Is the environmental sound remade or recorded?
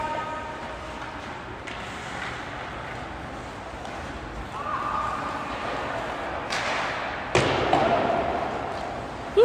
recorded